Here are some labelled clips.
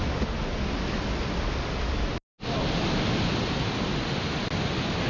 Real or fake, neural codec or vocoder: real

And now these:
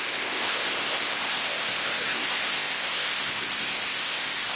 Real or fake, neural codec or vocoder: fake, codec, ZipCodec